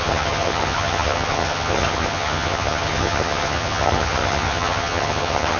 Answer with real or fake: fake